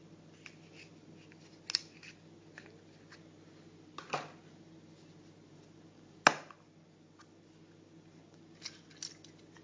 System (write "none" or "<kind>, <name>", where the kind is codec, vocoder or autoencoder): none